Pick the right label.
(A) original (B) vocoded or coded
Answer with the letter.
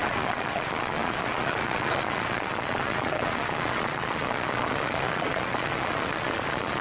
B